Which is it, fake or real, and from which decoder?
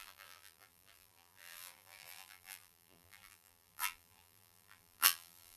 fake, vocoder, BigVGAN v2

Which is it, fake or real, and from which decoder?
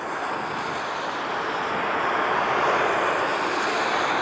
real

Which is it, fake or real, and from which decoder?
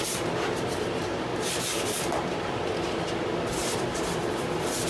fake, vocoder, BigVGAN v2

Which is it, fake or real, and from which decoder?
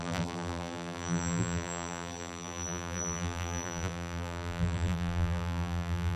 fake, vocoder, BigVGAN v2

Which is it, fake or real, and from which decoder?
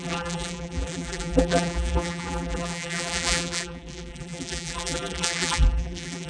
fake, vocoder, BigVGAN v2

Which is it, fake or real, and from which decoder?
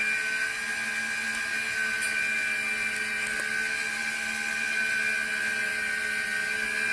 real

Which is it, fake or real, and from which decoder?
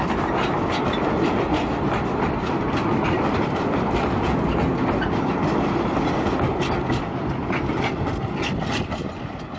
real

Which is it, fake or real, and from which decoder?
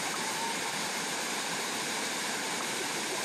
fake, vocoder, BigVGAN v2